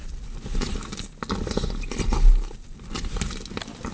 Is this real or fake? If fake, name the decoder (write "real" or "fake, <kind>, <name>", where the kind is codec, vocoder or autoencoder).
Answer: real